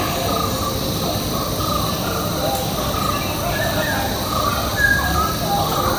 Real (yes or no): yes